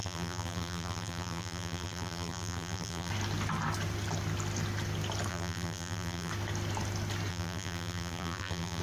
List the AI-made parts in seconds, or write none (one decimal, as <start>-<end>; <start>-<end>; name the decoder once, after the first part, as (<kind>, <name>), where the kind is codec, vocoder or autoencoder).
0.0-3.1 (vocoder, BigVGAN v2); 5.3-6.3; 7.3-8.8